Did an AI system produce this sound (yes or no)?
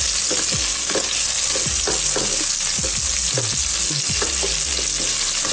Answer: no